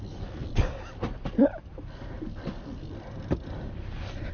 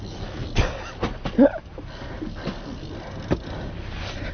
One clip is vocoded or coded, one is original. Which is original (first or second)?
second